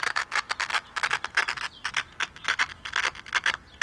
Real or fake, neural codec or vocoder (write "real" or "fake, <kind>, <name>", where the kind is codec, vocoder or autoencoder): real